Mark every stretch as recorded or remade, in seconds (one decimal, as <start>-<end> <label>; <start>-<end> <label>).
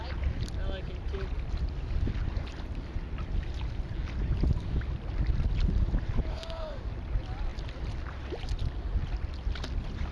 0.0-6.3 recorded; 6.3-6.8 remade; 6.8-10.1 recorded